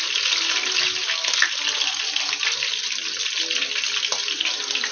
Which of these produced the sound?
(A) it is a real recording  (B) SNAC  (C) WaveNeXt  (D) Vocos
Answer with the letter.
A